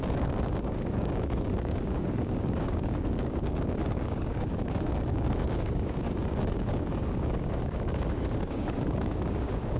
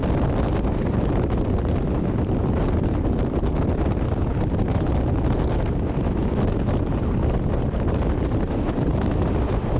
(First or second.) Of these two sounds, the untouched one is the second